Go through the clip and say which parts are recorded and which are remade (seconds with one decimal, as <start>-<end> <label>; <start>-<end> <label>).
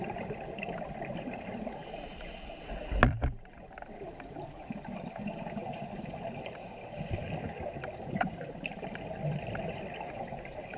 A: 0.0-5.6 remade; 5.6-8.1 recorded; 8.1-10.8 remade